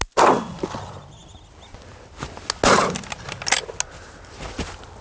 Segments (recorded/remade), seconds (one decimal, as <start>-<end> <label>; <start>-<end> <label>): 0.0-5.0 recorded